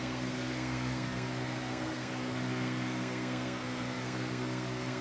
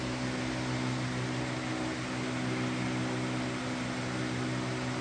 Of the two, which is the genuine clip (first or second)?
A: second